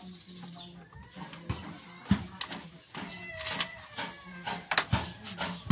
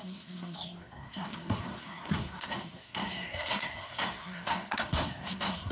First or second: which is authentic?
first